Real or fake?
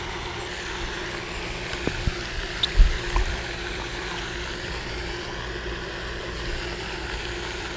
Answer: real